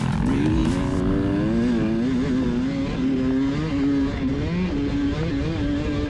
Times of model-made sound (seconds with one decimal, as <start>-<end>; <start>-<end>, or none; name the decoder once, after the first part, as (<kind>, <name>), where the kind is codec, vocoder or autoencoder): none

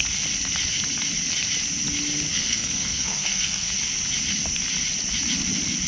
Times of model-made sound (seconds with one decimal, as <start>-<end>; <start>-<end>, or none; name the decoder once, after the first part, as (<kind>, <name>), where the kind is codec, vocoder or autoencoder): 2.3-3.7 (codec, SNAC)

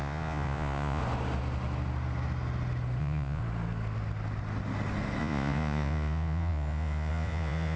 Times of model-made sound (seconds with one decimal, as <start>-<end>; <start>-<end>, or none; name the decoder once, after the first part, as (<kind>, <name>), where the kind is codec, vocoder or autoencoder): 0.0-1.0 (vocoder, Vocos); 3.0-3.4; 5.2-7.8

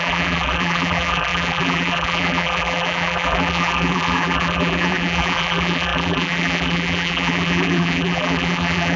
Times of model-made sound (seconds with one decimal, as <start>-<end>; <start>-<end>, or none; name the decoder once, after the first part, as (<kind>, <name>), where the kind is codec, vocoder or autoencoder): 0.0-9.0 (vocoder, BigVGAN v2)

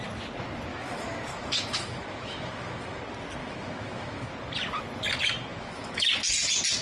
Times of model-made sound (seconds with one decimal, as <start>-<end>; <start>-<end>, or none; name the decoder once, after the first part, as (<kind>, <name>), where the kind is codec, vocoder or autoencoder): 0.7-3.0 (autoencoder, DAC-VAE); 3.4-4.3; 5.5-6.1

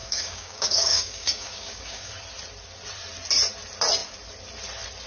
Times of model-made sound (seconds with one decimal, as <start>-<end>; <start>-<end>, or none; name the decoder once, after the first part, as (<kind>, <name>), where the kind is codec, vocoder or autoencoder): 0.0-2.1 (codec, DAC)

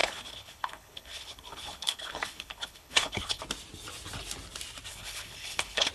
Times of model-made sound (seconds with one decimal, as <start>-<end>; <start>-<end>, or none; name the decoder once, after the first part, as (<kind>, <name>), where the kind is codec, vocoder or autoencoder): 0.0-3.4 (codec, HILCodec); 4.9-5.9